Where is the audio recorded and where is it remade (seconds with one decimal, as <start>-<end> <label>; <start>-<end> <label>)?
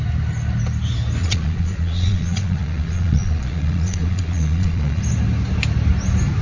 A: 0.0-1.2 recorded; 1.2-5.0 remade; 5.0-6.4 recorded